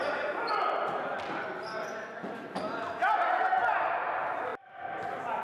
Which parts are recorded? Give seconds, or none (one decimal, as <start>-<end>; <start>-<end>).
0.0-5.4

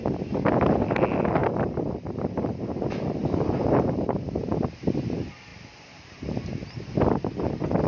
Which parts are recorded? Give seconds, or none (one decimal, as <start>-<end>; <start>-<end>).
0.0-1.4; 4.4-5.5; 6.9-7.9